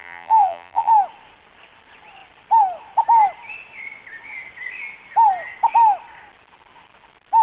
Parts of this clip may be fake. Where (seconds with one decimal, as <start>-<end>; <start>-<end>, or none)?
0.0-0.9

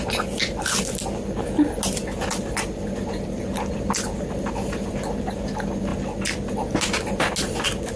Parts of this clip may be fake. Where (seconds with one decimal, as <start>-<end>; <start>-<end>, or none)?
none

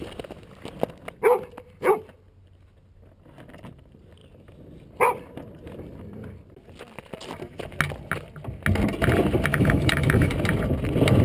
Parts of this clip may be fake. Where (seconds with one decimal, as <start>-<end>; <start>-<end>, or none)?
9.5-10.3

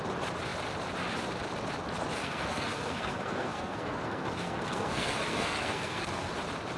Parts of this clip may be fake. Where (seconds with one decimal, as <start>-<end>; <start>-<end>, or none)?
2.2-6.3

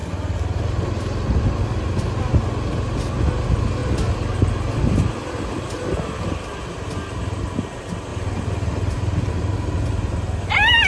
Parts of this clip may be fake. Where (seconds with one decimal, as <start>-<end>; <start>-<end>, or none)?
3.8-6.6; 8.1-9.3

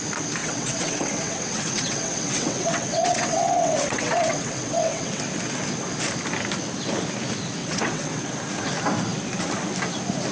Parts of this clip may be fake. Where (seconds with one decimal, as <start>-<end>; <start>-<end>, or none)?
0.4-5.2; 7.6-8.3